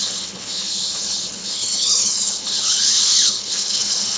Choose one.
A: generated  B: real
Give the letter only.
A